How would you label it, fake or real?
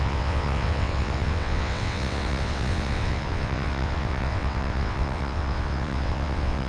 fake